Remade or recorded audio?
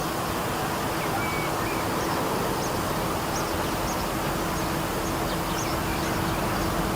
recorded